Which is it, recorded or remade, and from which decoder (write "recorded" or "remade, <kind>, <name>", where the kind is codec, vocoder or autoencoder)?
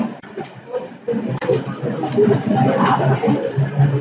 recorded